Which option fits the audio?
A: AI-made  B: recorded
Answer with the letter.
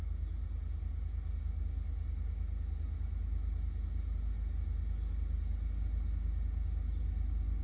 B